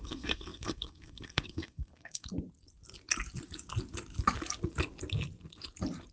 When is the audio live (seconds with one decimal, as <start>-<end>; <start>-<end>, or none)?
2.3-6.1